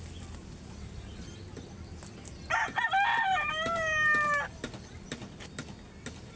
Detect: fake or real real